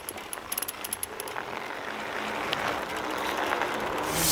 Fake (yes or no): no